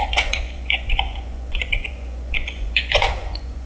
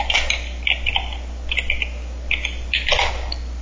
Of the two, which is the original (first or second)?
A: second